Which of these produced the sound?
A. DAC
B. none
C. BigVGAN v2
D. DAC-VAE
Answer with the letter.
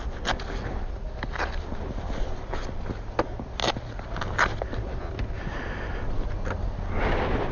B